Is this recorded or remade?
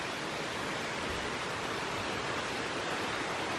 remade